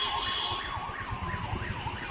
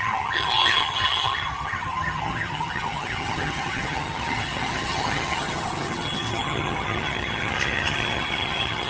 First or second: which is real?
first